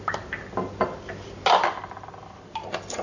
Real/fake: real